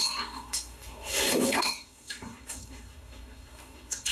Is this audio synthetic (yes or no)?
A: yes